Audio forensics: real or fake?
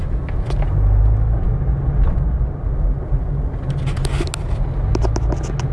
real